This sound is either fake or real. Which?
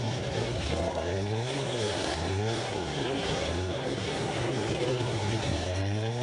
fake